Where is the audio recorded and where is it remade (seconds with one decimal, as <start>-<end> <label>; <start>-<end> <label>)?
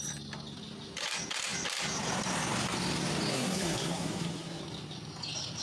0.0-3.3 recorded; 3.3-4.6 remade; 4.6-5.6 recorded